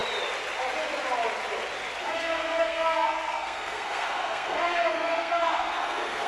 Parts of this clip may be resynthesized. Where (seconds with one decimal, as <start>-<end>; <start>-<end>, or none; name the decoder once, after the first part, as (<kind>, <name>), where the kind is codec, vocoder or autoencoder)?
2.0-6.3 (codec, SNAC)